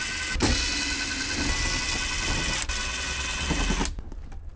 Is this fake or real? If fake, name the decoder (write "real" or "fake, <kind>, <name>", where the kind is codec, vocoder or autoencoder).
real